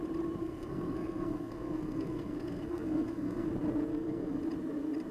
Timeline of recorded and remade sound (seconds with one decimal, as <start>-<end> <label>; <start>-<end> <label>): 0.0-0.4 recorded; 0.4-3.5 remade; 3.5-3.9 recorded; 3.9-4.4 remade; 4.4-5.1 recorded